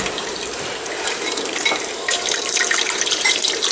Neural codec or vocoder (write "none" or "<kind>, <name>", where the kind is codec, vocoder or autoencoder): vocoder, BigVGAN v2